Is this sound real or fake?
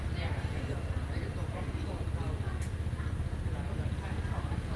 real